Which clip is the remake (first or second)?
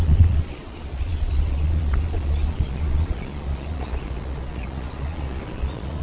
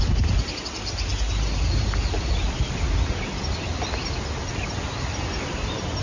first